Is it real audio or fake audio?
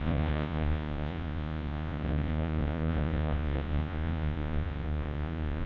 fake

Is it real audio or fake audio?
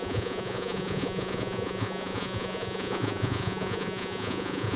fake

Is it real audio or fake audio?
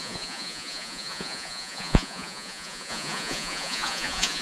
fake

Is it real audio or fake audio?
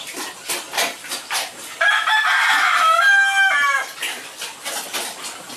real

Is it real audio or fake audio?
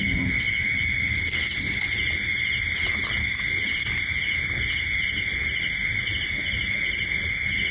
real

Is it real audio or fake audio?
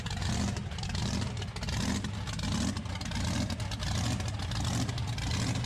real